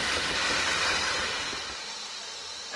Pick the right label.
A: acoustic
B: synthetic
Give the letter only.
A